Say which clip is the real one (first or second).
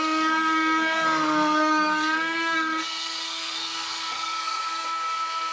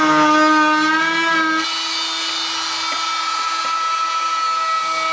second